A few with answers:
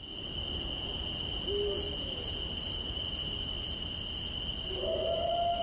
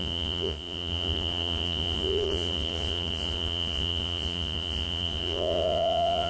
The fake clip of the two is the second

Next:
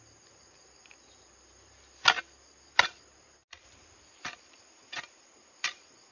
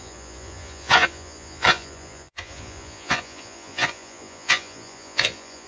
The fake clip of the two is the second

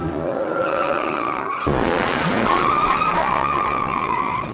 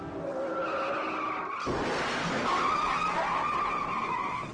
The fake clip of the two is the first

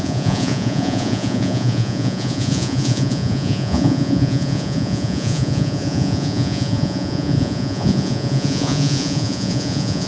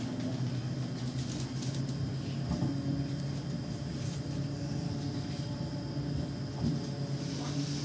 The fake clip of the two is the first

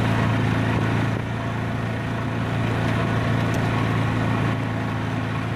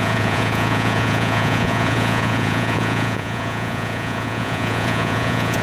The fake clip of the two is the second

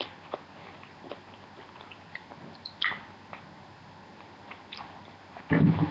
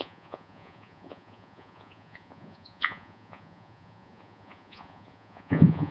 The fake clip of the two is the second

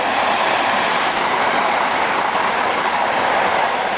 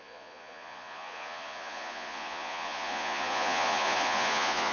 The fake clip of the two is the second